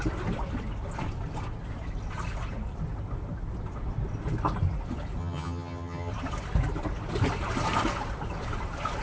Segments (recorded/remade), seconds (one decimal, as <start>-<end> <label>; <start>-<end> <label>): 0.0-5.2 recorded; 5.2-6.1 remade; 6.1-9.0 recorded